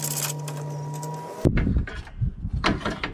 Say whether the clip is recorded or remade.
recorded